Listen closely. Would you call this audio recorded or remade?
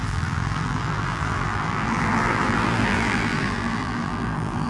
remade